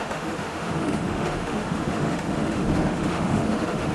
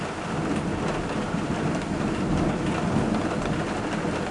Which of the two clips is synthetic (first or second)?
first